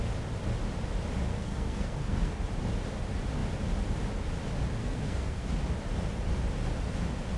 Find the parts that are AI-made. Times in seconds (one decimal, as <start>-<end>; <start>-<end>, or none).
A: 1.3-2.4; 4.8-5.5